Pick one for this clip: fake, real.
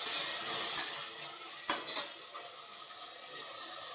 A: real